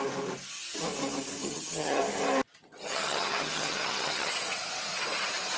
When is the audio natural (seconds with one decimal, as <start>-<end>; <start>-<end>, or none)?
0.0-1.4; 2.0-2.5; 4.3-5.6